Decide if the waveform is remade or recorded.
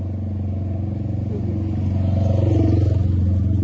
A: recorded